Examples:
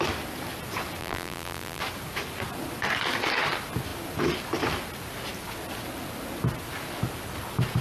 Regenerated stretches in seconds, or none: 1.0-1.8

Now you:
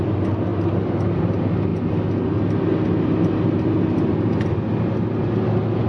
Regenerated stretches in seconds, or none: none

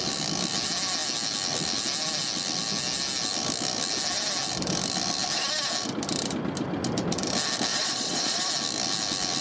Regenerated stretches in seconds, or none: 7.7-8.5

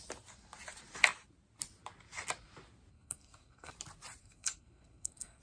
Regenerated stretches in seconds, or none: 2.9-3.7; 4.2-5.4

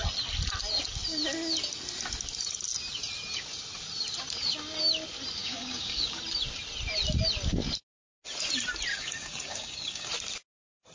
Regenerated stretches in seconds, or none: 5.4-6.2; 8.9-10.1